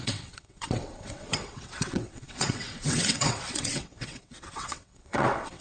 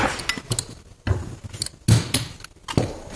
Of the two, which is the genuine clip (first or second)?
second